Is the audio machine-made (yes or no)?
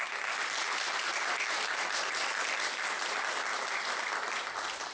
no